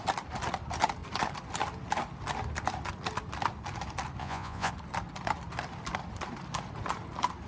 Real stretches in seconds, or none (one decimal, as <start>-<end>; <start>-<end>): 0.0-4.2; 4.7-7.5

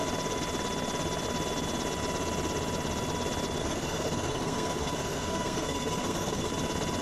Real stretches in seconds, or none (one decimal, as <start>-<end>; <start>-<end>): 0.0-3.6; 6.5-7.0

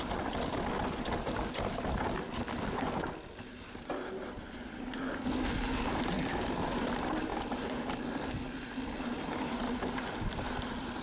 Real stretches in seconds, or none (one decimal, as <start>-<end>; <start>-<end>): 0.0-11.0

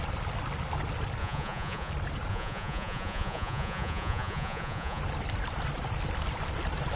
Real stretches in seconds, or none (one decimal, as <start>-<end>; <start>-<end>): 0.0-1.2; 1.9-2.3; 5.0-7.0

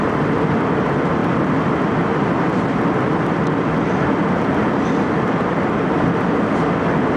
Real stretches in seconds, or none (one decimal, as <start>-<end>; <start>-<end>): 1.2-2.5